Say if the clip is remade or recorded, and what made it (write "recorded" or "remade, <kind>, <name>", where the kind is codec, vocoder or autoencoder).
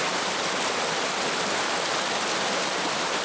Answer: recorded